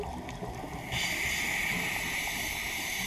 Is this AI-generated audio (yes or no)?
no